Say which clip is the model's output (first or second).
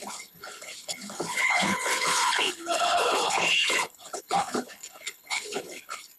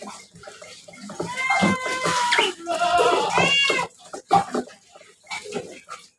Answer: first